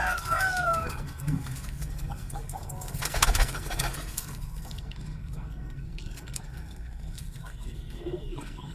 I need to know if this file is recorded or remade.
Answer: remade